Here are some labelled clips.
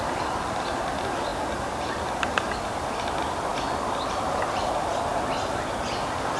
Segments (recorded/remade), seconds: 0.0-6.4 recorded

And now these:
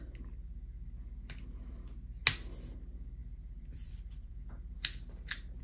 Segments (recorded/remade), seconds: 0.0-3.2 recorded; 3.2-4.4 remade; 4.4-5.6 recorded

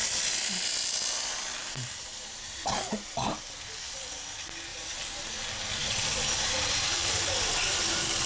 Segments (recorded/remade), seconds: 0.0-1.6 recorded; 1.6-3.3 remade; 3.3-4.7 recorded; 4.7-5.3 remade; 5.3-5.8 recorded; 5.8-7.5 remade; 7.5-8.3 recorded